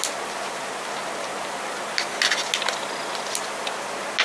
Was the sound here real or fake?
real